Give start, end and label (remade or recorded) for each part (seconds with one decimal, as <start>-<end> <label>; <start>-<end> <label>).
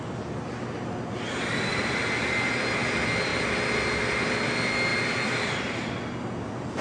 0.0-6.8 recorded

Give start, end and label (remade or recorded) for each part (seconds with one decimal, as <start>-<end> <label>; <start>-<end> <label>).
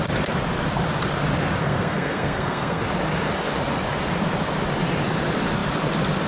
0.0-1.6 recorded; 1.6-2.8 remade; 2.8-6.3 recorded